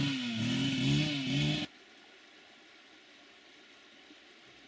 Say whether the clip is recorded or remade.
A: recorded